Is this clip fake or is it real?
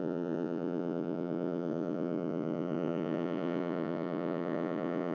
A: fake